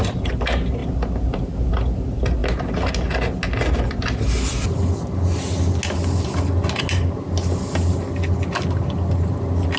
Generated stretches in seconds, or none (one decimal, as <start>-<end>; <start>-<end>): none